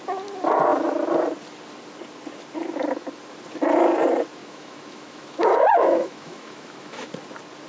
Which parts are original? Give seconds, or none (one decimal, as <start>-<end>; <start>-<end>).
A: 0.0-4.4; 7.1-7.7